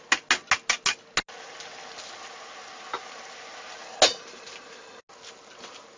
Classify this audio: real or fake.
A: real